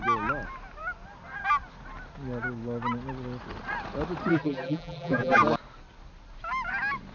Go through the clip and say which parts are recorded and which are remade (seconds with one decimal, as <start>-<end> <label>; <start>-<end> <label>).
0.0-4.3 recorded; 4.3-5.4 remade; 5.4-7.1 recorded